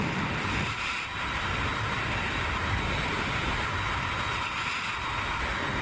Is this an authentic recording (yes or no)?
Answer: no